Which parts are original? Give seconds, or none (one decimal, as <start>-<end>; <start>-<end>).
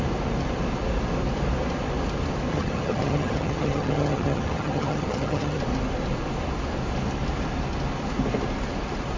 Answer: 0.0-2.5; 5.6-9.2